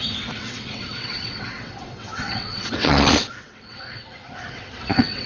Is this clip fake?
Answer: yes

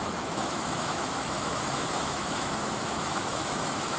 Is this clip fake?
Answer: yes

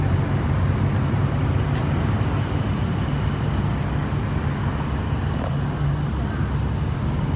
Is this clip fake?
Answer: no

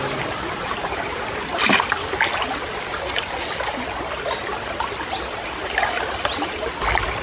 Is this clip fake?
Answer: no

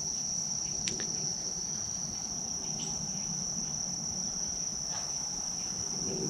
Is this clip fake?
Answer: no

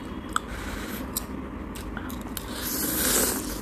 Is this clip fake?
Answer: no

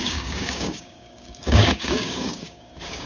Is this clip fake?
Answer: yes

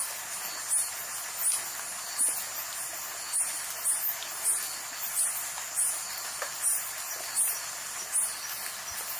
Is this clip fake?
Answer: no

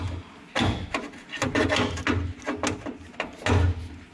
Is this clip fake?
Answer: no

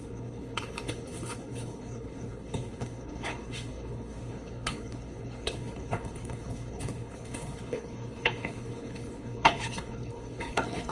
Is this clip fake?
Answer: yes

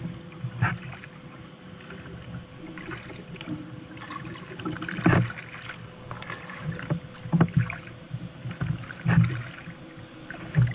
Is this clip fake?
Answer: no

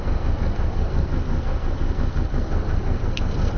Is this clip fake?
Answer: yes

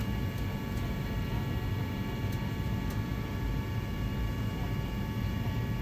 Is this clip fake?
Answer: no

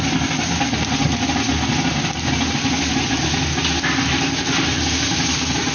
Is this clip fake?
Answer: no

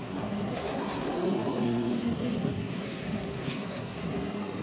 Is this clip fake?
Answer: yes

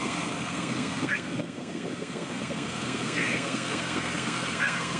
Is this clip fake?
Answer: yes